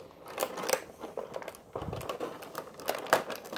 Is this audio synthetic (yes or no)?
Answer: no